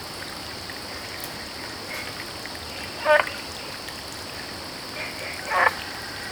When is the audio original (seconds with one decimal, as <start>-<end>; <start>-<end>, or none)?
1.2-5.0